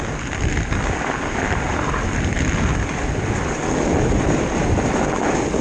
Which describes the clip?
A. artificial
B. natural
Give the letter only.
B